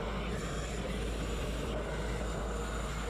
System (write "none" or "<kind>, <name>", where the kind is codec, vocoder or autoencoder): none